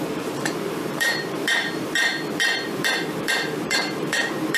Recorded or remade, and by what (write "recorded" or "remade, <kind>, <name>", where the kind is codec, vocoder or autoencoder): remade, vocoder, BigVGAN v2